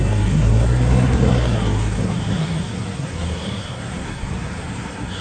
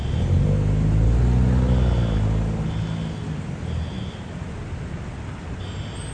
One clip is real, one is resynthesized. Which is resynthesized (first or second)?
first